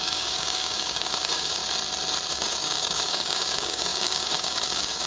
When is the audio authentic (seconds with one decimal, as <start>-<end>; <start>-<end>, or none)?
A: 1.6-2.3